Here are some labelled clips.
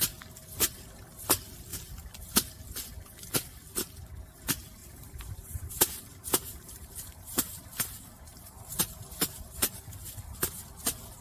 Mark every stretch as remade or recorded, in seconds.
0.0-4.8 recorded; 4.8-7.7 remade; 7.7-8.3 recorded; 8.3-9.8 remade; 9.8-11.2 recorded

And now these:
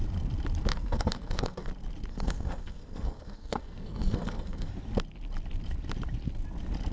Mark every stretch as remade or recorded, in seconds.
0.0-0.7 recorded; 0.7-1.7 remade; 1.7-2.1 recorded; 2.1-4.7 remade; 4.7-6.9 recorded

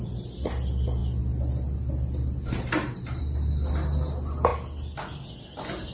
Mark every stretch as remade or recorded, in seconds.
0.0-5.9 recorded

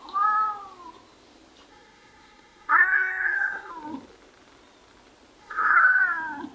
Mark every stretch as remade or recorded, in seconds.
0.0-1.7 recorded; 1.7-3.7 remade; 3.7-5.4 recorded; 5.4-6.0 remade; 6.0-6.5 recorded

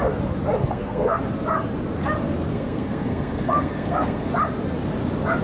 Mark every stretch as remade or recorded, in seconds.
0.0-0.6 recorded; 0.6-1.2 remade; 1.2-2.5 recorded; 2.5-4.3 remade; 4.3-5.4 recorded

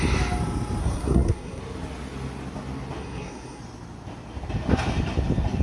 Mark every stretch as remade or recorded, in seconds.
0.0-0.8 recorded; 0.8-1.6 remade; 1.6-3.0 recorded; 3.0-3.6 remade; 3.6-5.6 recorded